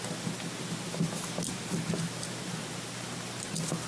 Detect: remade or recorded recorded